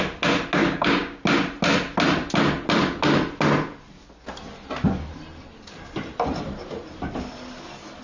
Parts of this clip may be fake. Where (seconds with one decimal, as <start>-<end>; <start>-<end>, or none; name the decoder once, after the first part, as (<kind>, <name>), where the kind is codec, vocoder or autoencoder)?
0.6-1.2 (codec, DAC)